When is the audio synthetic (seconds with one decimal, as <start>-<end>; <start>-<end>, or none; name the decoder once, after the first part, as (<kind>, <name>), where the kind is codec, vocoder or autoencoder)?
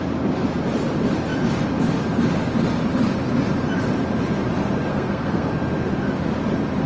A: 4.9-5.5 (codec, SNAC)